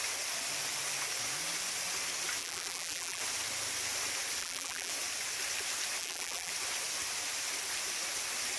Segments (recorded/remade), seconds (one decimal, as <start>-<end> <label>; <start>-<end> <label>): 0.0-2.4 recorded; 2.4-3.2 remade; 3.2-4.4 recorded; 4.4-4.9 remade; 4.9-6.0 recorded; 6.0-6.5 remade; 6.5-8.6 recorded